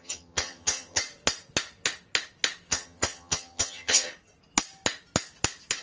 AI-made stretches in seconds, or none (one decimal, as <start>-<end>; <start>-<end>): 0.0-1.0; 2.7-4.1